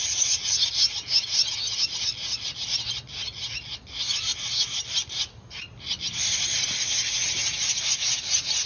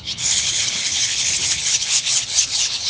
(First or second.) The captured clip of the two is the first